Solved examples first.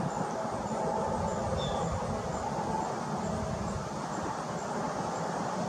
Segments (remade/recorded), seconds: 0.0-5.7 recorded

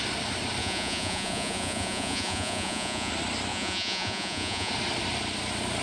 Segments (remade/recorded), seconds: 0.0-0.6 recorded; 0.6-3.1 remade; 3.1-3.5 recorded; 3.5-4.7 remade; 4.7-5.8 recorded

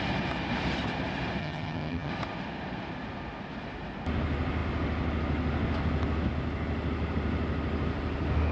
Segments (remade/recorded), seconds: 0.0-1.4 recorded; 1.4-2.1 remade; 2.1-8.5 recorded

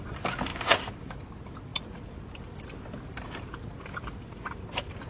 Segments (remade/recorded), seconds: 0.0-5.1 recorded

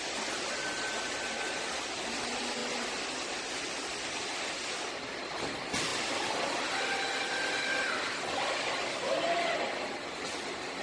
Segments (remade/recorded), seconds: 0.0-10.8 recorded

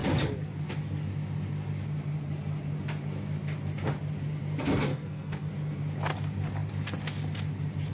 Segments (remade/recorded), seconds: 0.0-4.9 recorded; 4.9-5.5 remade; 5.5-7.9 recorded

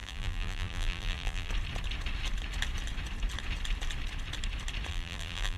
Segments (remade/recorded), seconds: 0.0-1.5 remade; 1.5-4.9 recorded; 4.9-5.6 remade